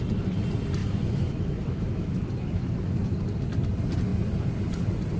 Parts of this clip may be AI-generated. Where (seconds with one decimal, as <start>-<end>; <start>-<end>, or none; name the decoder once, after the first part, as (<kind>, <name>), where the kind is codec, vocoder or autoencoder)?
0.8-3.2 (autoencoder, DAC-VAE)